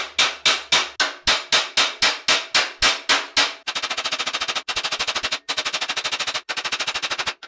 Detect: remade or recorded recorded